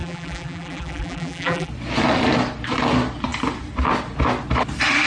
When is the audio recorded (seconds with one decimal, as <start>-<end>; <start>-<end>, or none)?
1.7-5.1